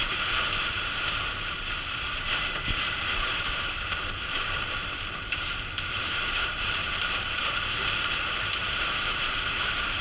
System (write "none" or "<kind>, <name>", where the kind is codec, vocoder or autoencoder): vocoder, BigVGAN v2